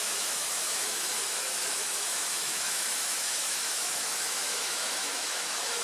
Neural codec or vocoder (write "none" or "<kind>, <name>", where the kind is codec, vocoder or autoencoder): autoencoder, DAC-VAE